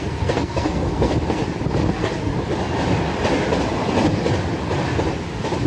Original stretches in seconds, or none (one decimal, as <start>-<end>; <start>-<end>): 1.4-1.9; 2.3-5.7